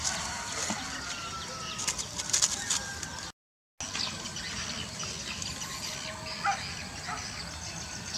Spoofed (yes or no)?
no